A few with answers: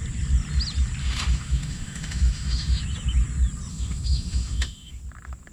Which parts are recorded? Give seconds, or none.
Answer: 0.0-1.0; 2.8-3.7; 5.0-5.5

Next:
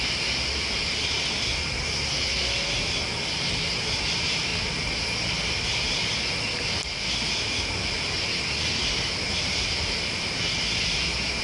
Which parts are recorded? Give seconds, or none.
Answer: 0.0-11.4

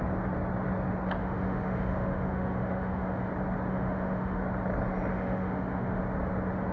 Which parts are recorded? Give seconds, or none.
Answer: 0.0-1.2; 3.3-3.7; 4.4-5.1; 6.0-6.7

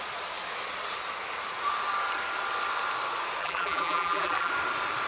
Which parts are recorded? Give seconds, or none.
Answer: 0.0-3.4; 4.5-5.1

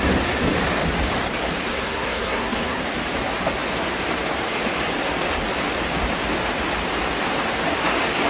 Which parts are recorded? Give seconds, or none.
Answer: 0.0-1.7; 2.8-8.3

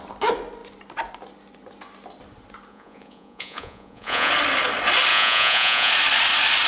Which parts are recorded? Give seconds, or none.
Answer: 0.0-2.7; 4.3-5.1; 5.9-6.7

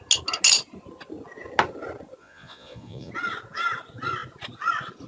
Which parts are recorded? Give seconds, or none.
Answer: 0.0-2.2; 3.1-5.1